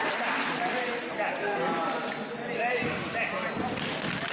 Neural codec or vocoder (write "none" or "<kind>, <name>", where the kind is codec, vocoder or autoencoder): none